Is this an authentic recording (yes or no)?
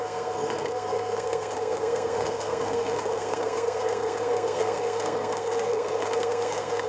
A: no